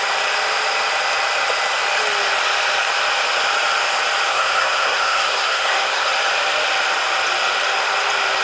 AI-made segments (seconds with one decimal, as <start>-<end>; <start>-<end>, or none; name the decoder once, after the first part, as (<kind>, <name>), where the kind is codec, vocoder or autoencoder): 4.3-6.1 (codec, SNAC)